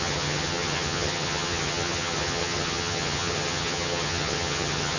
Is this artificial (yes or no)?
yes